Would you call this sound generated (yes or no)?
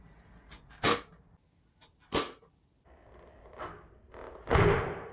no